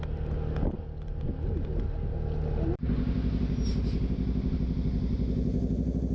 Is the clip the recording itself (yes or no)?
yes